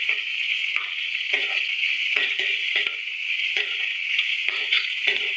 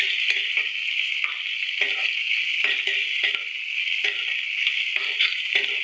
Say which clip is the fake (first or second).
first